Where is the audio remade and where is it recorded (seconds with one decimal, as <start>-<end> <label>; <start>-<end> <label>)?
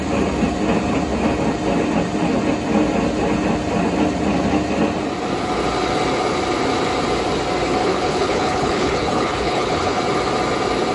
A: 0.0-7.8 recorded; 7.8-10.0 remade; 10.0-10.9 recorded